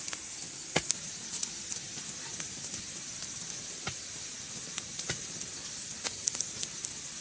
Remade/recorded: recorded